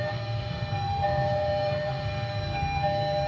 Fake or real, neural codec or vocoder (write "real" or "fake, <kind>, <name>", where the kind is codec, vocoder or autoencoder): fake, codec, SNAC